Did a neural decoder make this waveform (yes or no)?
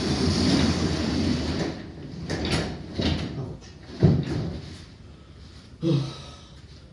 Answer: no